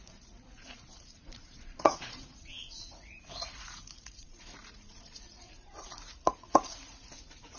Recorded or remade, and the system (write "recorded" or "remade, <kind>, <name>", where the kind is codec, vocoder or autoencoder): remade, vocoder, Vocos